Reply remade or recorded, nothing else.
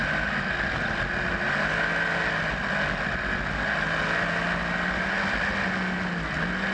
recorded